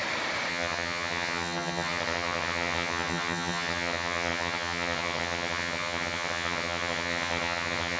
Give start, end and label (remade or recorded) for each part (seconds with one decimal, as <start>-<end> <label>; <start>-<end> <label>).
0.0-0.5 recorded; 0.5-8.0 remade